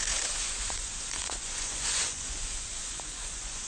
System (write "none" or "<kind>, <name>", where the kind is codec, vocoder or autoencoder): vocoder, Vocos